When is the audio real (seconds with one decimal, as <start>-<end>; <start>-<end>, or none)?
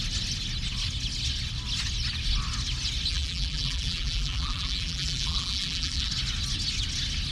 0.0-3.1; 6.1-7.3